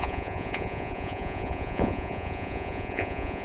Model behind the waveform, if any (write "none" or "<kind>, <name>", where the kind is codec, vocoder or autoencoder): vocoder, Vocos